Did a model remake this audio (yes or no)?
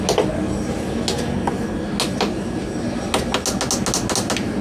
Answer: no